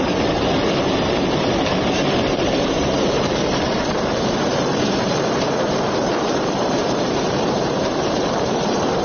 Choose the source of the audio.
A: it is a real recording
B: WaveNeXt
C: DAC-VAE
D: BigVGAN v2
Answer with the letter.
D